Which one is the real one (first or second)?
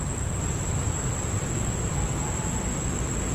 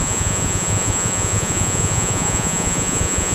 first